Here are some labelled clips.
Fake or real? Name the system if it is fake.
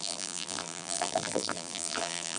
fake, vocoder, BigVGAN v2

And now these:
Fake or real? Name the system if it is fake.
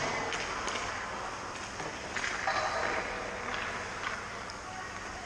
real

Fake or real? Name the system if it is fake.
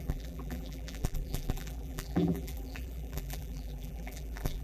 fake, vocoder, BigVGAN v2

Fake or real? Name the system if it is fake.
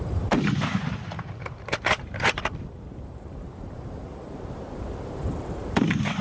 fake, vocoder, BigVGAN v2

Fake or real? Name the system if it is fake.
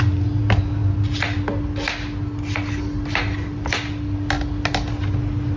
real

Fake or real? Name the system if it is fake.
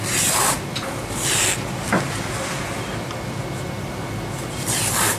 real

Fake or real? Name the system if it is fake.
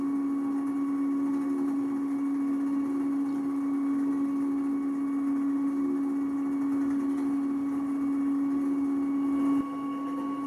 real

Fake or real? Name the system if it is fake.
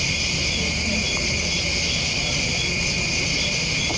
real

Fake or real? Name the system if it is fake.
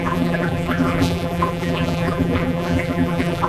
fake, vocoder, BigVGAN v2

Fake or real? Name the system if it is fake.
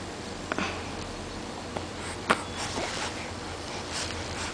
real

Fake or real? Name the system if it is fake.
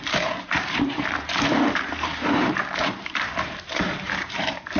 fake, vocoder, BigVGAN v2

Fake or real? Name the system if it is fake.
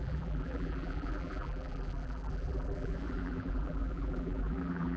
fake, vocoder, BigVGAN v2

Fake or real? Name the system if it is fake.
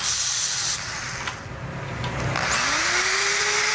fake, vocoder, BigVGAN v2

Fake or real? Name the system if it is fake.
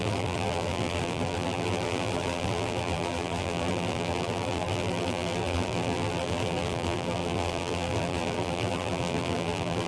fake, vocoder, BigVGAN v2